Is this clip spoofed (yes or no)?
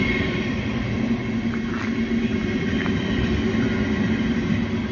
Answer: no